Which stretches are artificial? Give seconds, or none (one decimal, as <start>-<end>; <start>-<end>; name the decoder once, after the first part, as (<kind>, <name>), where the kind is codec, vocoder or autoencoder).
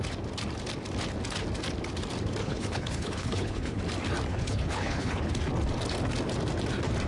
2.4-3.8 (codec, HILCodec); 4.3-5.3